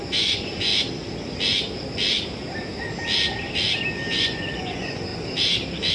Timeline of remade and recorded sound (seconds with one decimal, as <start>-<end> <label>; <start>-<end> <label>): 0.0-0.7 remade; 0.7-4.2 recorded; 4.2-5.1 remade; 5.1-5.9 recorded